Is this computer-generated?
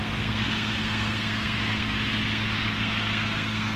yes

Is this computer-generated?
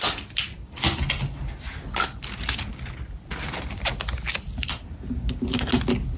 no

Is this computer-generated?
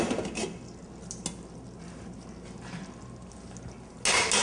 no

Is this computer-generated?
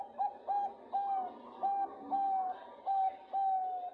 no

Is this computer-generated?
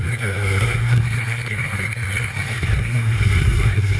yes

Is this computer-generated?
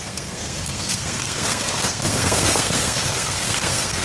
yes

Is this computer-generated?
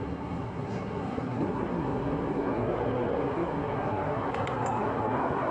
yes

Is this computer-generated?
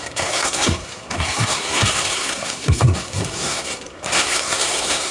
yes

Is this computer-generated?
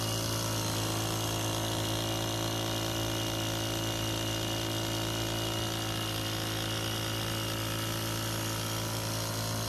no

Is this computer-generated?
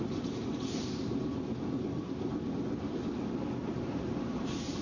no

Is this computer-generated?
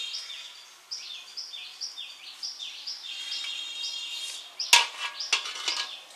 no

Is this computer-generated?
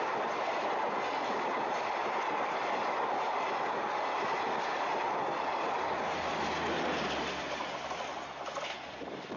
no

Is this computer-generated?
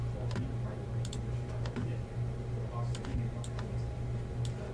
no